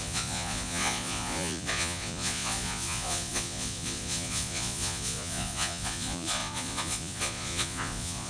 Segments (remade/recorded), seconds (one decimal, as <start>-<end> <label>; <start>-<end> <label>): 0.0-8.3 remade